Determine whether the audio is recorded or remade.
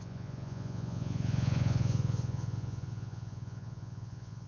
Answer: remade